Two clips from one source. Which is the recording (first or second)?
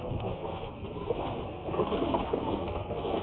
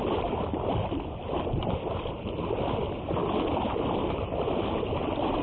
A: second